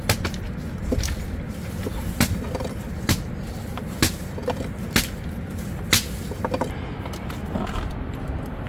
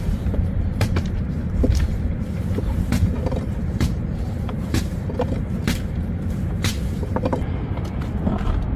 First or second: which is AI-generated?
second